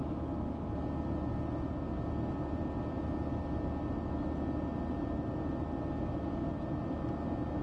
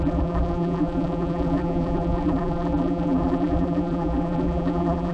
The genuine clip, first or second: first